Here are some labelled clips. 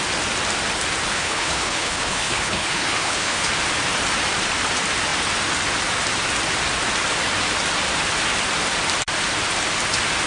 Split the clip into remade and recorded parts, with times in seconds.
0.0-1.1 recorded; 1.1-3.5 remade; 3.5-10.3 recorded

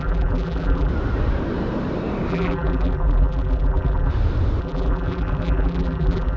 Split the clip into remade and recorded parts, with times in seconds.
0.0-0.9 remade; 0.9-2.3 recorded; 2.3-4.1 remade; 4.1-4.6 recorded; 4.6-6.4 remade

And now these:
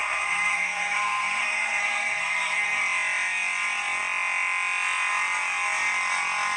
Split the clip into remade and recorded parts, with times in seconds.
0.0-2.8 remade; 2.8-6.6 recorded

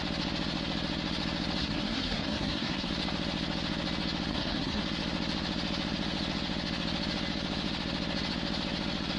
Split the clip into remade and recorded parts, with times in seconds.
0.0-1.6 recorded; 1.6-2.9 remade; 2.9-4.3 recorded; 4.3-4.8 remade; 4.8-9.2 recorded

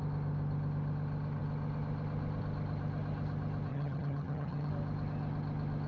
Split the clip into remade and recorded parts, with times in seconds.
0.0-3.7 recorded; 3.7-4.7 remade; 4.7-5.9 recorded

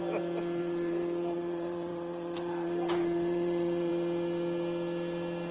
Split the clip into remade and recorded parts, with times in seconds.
0.0-0.6 recorded; 0.6-3.9 remade; 3.9-5.5 recorded